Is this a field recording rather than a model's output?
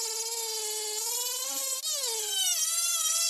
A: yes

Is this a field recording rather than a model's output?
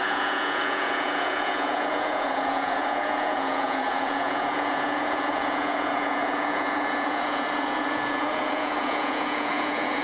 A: no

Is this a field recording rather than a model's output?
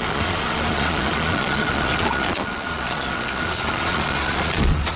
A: no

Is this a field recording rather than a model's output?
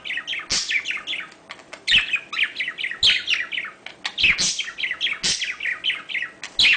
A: yes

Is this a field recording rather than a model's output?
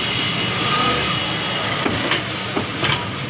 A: yes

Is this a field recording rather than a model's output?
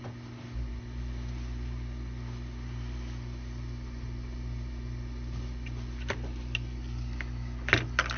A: yes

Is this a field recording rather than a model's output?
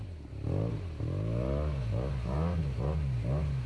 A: yes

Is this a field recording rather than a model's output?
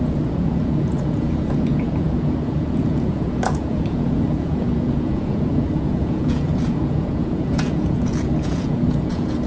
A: no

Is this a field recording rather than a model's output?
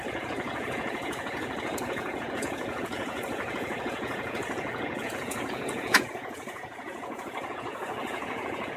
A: no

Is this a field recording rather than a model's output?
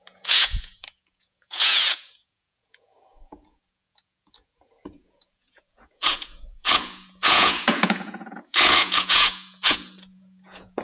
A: no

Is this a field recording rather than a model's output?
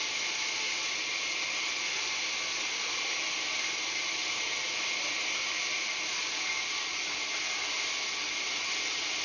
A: yes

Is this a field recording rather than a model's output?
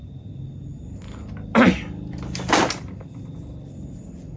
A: yes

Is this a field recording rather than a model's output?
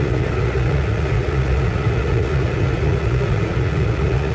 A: no